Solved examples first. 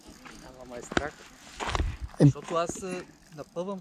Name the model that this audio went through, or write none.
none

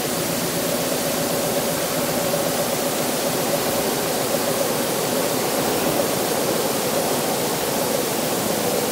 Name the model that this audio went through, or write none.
none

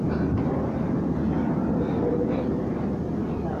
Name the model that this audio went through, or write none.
none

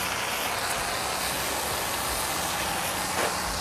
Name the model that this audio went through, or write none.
none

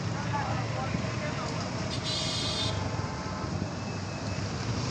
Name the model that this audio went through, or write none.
none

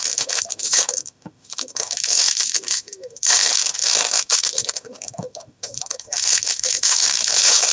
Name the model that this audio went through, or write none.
autoencoder, DAC-VAE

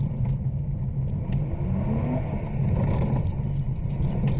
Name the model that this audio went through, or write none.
none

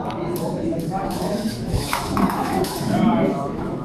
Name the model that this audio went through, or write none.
autoencoder, DAC-VAE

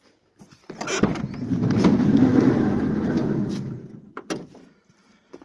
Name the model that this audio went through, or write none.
none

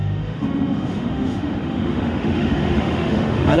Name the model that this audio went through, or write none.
autoencoder, DAC-VAE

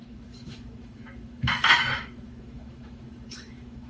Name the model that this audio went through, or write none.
autoencoder, DAC-VAE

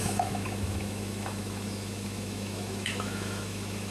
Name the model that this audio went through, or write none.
autoencoder, DAC-VAE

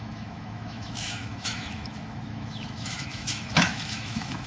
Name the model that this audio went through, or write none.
autoencoder, DAC-VAE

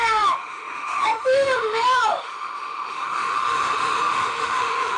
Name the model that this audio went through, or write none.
autoencoder, DAC-VAE